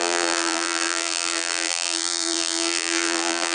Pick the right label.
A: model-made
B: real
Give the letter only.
A